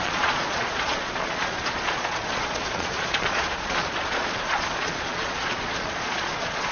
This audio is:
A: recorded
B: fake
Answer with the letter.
B